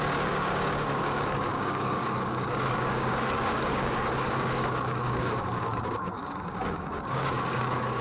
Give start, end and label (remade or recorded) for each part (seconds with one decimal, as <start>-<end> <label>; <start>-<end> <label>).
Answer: 0.0-8.0 remade